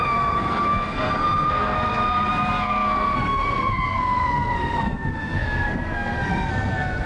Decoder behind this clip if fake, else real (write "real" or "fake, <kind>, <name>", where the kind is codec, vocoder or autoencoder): fake, codec, SNAC